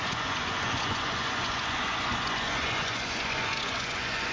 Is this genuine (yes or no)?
no